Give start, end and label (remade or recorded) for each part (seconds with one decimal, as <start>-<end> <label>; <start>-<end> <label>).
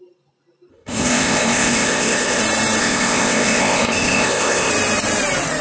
0.0-0.7 recorded; 0.7-2.4 remade; 2.4-2.8 recorded; 2.8-4.7 remade; 4.7-5.6 recorded